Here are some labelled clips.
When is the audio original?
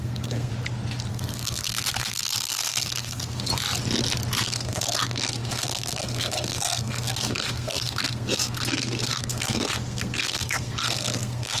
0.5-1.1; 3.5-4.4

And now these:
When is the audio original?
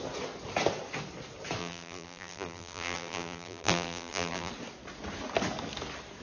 0.0-1.6; 4.5-6.2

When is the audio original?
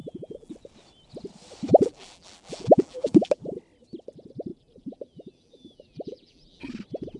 0.5-1.7; 3.6-4.5; 6.6-7.2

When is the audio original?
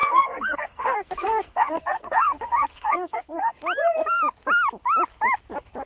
3.5-5.9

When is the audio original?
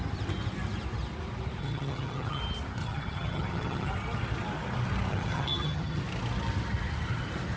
0.0-1.6; 2.4-2.8; 3.9-5.1; 6.0-7.6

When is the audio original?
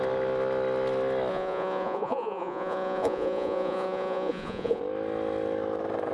0.0-1.3; 4.8-6.1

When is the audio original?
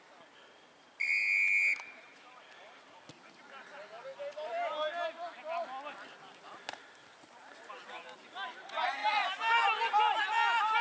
0.0-10.8